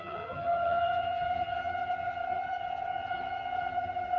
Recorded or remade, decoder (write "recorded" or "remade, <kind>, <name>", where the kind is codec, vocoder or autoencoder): remade, vocoder, HiFi-GAN